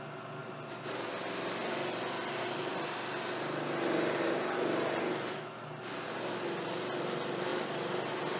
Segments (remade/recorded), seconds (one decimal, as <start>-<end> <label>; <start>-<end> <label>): 0.0-8.4 recorded